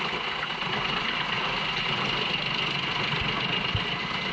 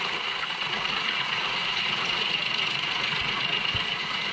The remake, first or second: second